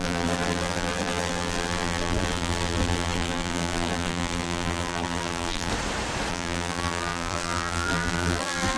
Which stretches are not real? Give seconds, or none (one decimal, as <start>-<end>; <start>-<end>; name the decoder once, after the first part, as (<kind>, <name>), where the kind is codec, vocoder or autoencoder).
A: 0.0-5.7 (vocoder, BigVGAN v2); 6.3-8.8